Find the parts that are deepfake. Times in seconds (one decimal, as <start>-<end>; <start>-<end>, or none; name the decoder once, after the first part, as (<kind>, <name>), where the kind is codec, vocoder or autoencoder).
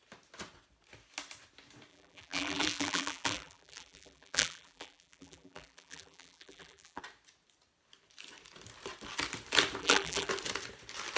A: 1.9-7.0 (vocoder, BigVGAN v2); 9.8-10.3